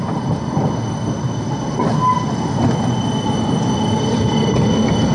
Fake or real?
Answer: real